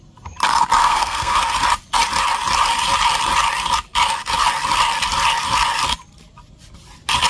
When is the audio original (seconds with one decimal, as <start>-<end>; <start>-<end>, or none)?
0.0-0.8; 1.4-7.3

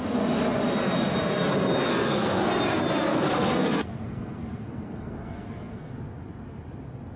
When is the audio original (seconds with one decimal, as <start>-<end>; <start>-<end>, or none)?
0.0-1.9; 2.4-3.1; 5.9-7.2

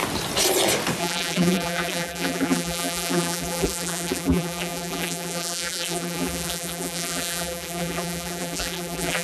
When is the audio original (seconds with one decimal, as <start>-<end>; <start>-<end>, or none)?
0.0-1.0

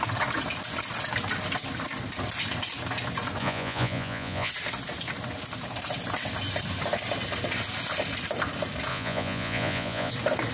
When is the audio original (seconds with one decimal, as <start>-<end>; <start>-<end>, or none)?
0.0-3.4; 4.5-8.9; 10.1-10.5

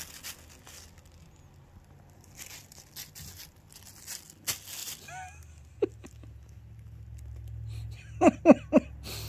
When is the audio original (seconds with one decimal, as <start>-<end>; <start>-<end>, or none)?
0.0-9.3

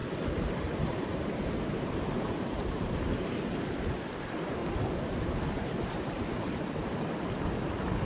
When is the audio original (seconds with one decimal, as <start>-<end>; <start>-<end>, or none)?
3.9-4.6; 7.3-8.1

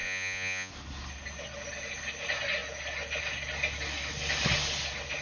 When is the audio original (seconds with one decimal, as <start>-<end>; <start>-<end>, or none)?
0.7-5.2